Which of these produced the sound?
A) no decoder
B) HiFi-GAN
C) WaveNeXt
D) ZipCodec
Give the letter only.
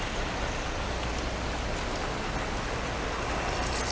A